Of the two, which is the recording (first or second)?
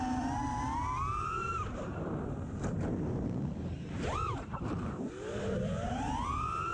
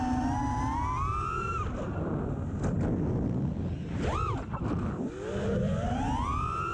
second